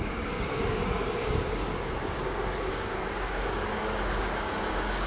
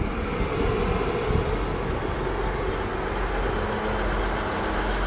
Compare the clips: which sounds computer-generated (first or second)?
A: first